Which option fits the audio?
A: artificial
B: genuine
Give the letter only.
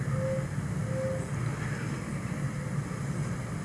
B